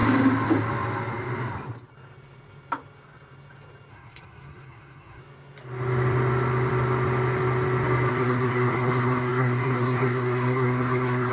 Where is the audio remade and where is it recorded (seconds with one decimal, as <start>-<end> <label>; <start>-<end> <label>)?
0.0-3.9 recorded; 3.9-5.2 remade; 5.2-8.1 recorded; 8.1-11.3 remade